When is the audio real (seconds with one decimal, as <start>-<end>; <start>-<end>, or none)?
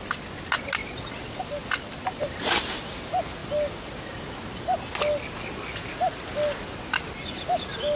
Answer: 0.0-8.0